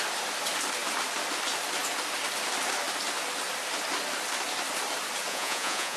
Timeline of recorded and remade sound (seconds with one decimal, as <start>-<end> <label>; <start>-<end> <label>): 0.0-5.3 recorded; 5.3-6.0 remade